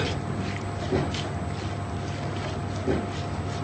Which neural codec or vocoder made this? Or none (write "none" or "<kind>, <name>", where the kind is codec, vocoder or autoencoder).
none